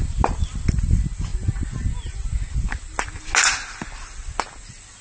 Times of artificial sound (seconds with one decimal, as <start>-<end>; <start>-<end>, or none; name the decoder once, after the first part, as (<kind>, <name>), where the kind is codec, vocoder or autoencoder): none